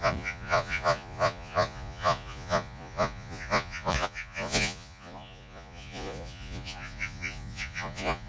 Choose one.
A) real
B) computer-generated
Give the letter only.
B